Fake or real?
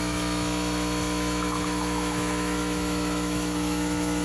fake